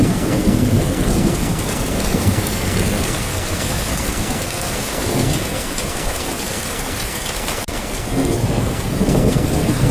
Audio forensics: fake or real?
fake